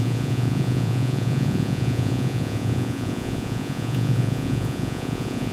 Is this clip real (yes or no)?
no